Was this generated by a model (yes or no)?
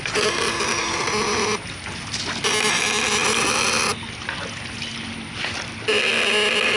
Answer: no